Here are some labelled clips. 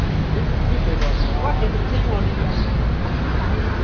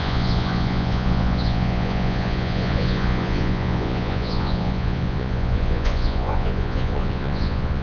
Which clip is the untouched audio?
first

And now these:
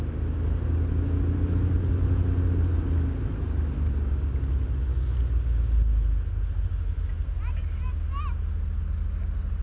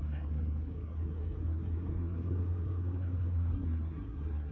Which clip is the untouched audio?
first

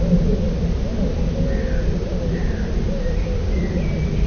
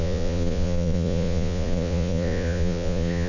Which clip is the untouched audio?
first